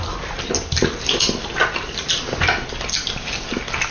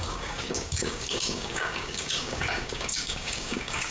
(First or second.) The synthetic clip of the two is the second